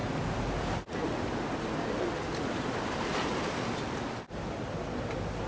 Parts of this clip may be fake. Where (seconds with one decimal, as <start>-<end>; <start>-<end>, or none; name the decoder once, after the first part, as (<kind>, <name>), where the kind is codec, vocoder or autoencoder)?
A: none